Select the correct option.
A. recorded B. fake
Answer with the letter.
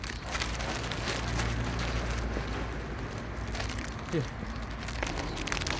A